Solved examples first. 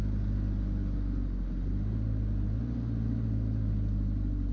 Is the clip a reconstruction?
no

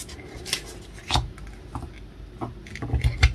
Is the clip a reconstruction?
no